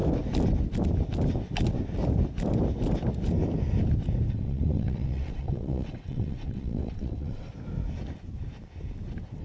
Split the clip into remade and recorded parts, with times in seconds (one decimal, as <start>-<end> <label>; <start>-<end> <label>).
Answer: 0.0-4.3 recorded; 4.3-7.5 remade; 7.5-9.4 recorded